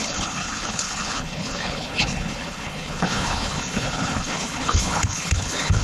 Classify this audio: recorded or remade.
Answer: remade